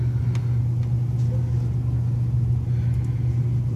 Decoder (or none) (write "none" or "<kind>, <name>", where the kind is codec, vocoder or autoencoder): none